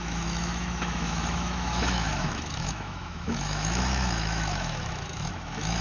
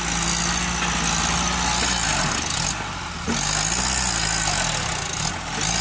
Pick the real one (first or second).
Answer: second